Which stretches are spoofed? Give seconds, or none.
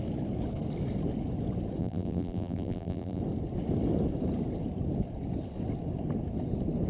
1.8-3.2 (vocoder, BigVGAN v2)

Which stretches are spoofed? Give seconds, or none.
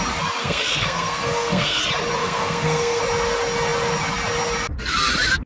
0.4-1.8 (codec, SNAC); 2.2-3.0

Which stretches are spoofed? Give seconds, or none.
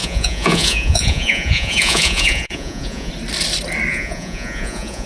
0.0-3.1 (vocoder, Vocos); 3.9-5.1